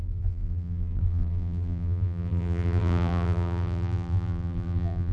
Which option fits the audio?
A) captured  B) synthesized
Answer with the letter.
B